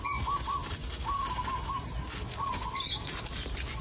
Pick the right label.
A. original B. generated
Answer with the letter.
A